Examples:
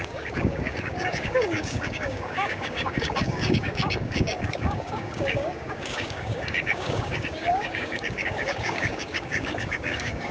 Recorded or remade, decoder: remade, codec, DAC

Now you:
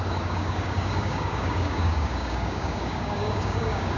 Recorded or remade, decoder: remade, codec, DAC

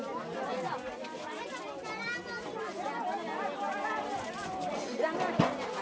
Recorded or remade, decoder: recorded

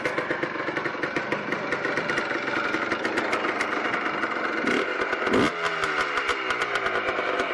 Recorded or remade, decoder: recorded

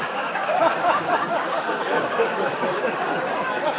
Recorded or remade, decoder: remade, codec, DAC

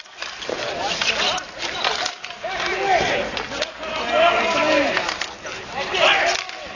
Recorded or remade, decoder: recorded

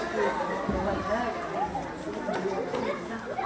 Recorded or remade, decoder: recorded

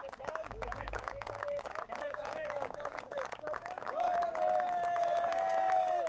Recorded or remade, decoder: remade, codec, DAC